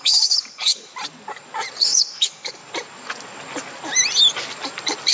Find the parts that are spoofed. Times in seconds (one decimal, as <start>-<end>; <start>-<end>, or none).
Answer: 0.0-0.9; 1.8-2.6